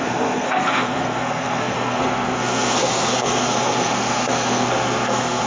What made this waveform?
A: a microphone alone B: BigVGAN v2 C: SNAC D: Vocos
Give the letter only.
C